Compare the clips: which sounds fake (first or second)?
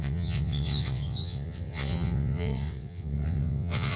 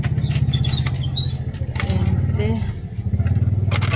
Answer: first